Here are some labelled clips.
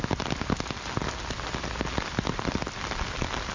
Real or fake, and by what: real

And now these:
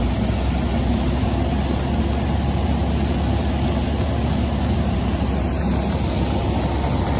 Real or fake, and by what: real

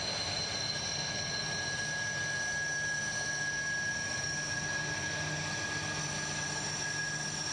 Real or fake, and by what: real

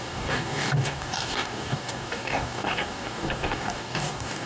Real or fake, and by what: fake, codec, DAC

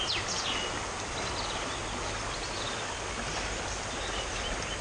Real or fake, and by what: real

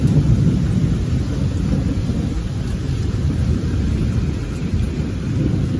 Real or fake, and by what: real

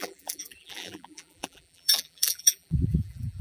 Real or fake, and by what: fake, vocoder, BigVGAN v2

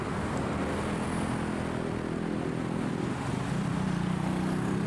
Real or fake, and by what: real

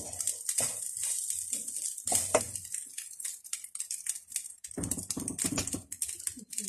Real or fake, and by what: real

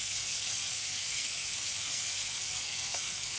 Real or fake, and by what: fake, codec, SNAC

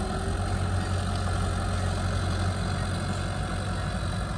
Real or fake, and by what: real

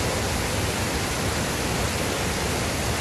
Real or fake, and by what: real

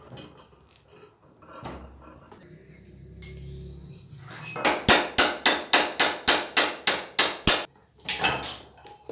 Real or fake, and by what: real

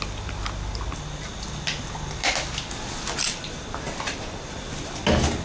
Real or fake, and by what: real